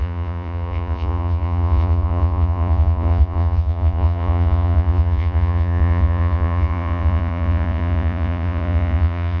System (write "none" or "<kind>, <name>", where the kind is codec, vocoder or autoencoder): vocoder, Vocos